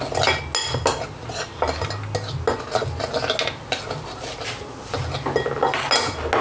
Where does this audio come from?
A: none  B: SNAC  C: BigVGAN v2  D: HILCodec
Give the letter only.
A